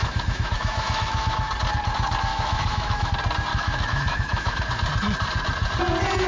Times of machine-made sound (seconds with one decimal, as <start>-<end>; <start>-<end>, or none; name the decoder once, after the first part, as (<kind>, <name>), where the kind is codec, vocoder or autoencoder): 0.0-1.5 (autoencoder, DAC-VAE); 2.3-3.1; 3.5-4.6